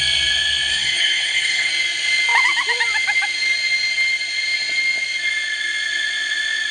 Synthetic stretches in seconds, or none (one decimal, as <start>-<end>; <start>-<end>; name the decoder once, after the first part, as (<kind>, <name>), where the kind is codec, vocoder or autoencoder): 0.7-1.7 (codec, HILCodec)